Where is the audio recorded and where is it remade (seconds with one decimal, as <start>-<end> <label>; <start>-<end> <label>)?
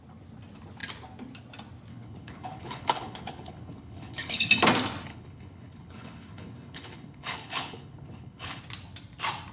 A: 0.0-1.9 recorded; 1.9-4.5 remade; 4.5-5.1 recorded; 5.1-8.6 remade; 8.6-9.5 recorded